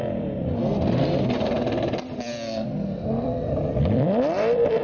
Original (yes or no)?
no